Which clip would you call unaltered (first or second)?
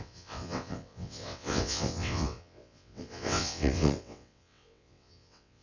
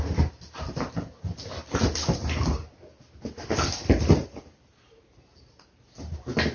second